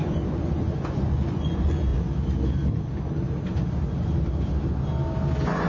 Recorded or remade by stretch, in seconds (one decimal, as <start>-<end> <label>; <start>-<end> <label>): 0.0-1.9 remade; 1.9-5.3 recorded; 5.3-5.7 remade